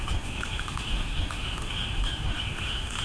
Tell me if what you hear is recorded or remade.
remade